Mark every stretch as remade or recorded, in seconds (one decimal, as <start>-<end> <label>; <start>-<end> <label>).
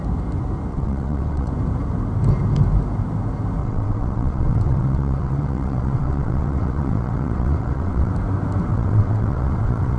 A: 0.0-0.7 recorded; 0.7-1.5 remade; 1.5-3.6 recorded; 3.6-8.1 remade; 8.1-8.7 recorded; 8.7-10.0 remade